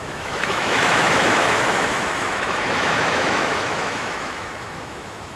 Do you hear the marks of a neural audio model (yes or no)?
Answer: yes